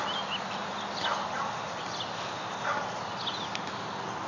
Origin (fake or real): real